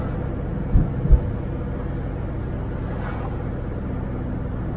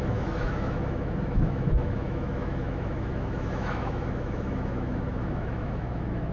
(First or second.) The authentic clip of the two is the first